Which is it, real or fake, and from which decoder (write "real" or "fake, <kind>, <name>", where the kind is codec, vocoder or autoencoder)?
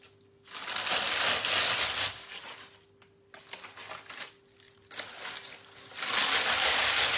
real